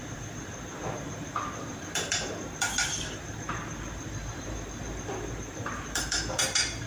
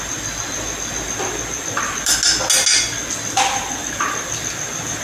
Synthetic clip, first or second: first